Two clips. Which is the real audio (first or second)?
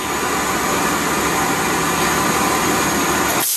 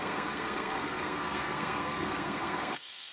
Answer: first